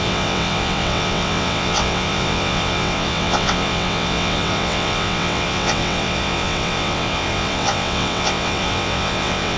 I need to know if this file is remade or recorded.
remade